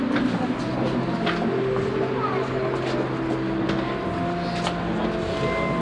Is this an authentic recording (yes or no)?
yes